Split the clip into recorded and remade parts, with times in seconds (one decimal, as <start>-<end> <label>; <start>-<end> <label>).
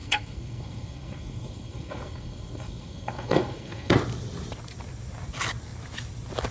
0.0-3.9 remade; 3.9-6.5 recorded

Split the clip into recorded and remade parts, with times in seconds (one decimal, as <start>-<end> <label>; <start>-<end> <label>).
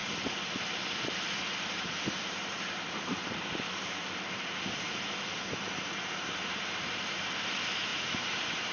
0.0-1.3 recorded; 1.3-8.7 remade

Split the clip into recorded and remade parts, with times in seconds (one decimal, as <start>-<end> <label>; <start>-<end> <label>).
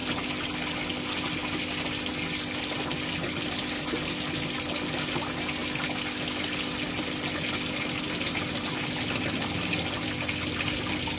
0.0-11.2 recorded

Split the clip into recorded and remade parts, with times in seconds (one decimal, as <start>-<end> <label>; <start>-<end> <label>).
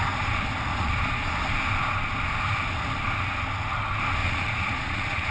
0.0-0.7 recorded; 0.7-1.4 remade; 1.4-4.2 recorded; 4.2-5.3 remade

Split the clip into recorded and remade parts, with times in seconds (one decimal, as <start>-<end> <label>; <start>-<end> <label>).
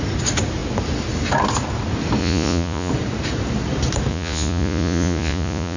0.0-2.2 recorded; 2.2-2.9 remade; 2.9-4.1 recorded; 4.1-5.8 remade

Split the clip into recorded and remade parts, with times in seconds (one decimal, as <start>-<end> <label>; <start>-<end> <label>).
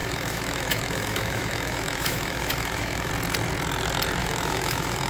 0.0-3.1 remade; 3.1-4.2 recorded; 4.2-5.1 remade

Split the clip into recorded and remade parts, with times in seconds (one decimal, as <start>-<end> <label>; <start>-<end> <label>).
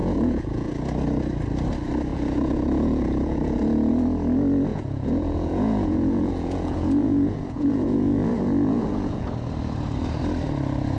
0.0-0.7 remade; 0.7-2.1 recorded; 2.1-3.9 remade; 3.9-4.7 recorded; 4.7-9.3 remade; 9.3-11.0 recorded